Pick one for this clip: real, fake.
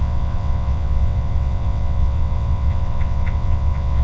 fake